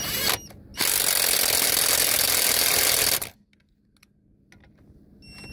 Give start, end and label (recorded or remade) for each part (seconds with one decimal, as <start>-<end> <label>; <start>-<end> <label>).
0.0-5.5 recorded